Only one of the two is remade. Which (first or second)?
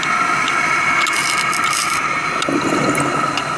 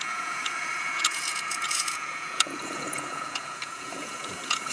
second